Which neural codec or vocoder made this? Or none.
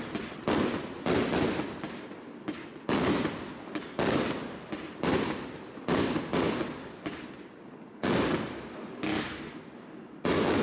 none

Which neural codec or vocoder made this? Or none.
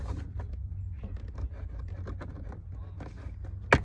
none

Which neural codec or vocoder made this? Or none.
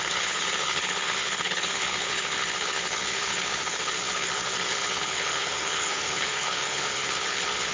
codec, HILCodec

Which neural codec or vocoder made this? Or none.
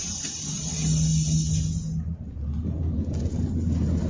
none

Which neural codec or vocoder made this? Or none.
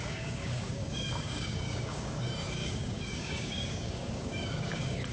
codec, DAC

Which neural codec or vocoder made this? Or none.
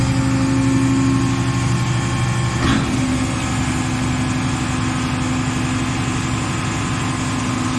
none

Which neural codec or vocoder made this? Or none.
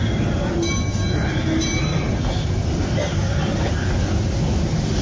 none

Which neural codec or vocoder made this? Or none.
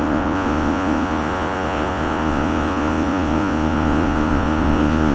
vocoder, Vocos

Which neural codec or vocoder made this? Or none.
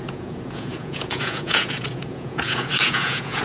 vocoder, Vocos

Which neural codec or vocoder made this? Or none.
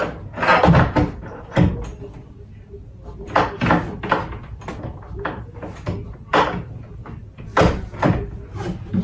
none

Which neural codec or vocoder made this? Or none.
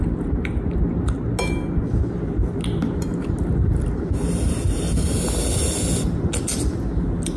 none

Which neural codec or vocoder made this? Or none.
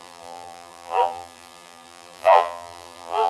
vocoder, BigVGAN v2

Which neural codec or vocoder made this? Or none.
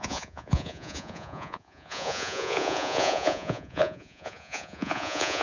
vocoder, Vocos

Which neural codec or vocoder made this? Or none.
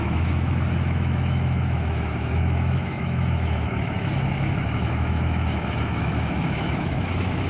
autoencoder, DAC-VAE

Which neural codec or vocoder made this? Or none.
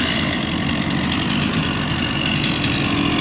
none